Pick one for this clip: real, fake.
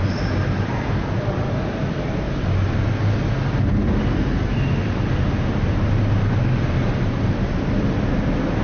real